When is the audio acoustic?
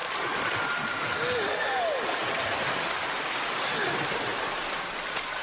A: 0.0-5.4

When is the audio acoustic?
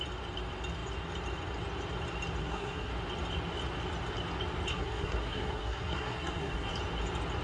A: 0.0-2.4; 2.9-4.7; 6.7-7.4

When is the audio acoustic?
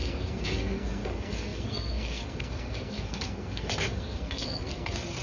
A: none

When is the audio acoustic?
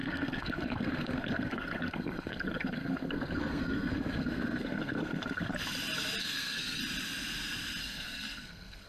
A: 5.5-6.2; 6.8-7.8